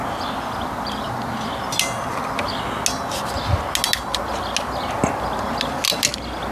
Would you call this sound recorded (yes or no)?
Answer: yes